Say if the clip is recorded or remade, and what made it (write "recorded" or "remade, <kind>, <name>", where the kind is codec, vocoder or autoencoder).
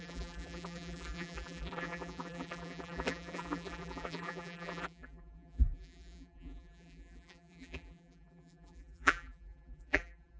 remade, vocoder, BigVGAN v2